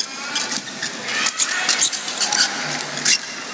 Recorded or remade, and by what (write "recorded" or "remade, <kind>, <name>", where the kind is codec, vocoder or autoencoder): recorded